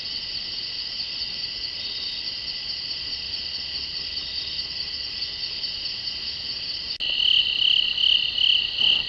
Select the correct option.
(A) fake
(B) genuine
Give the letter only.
B